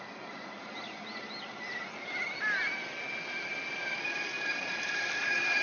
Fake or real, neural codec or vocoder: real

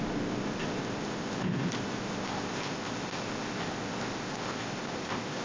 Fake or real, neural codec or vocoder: fake, codec, ZipCodec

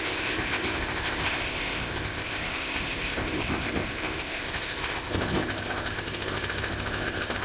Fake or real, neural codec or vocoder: fake, codec, ZipCodec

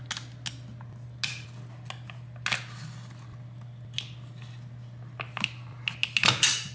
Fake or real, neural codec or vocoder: real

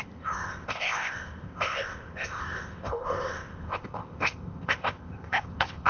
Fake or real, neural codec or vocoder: fake, codec, ZipCodec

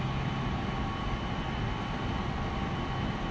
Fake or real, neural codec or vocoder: real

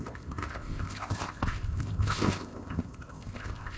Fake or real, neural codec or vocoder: fake, codec, ZipCodec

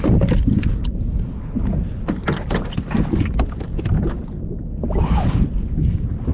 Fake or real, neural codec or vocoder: real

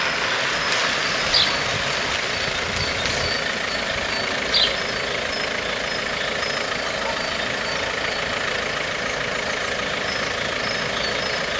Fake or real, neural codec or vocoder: real